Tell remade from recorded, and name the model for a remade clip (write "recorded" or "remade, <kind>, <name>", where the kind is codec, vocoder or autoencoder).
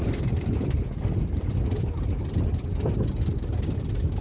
recorded